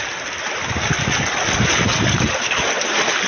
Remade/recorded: recorded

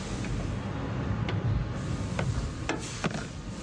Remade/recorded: recorded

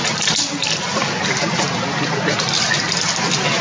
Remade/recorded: recorded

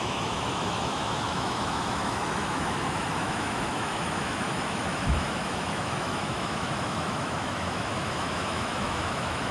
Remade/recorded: remade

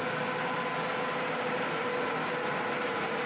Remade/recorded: recorded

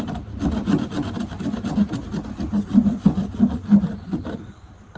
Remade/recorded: recorded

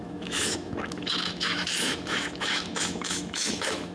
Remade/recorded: remade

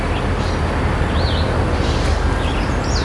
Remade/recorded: recorded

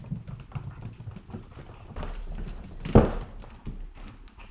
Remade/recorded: recorded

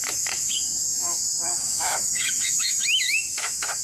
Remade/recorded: remade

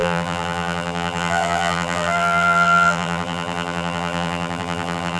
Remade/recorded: remade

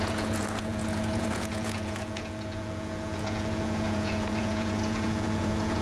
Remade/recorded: remade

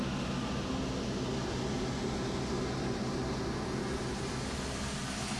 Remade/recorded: recorded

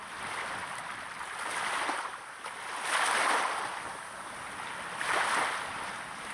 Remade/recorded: recorded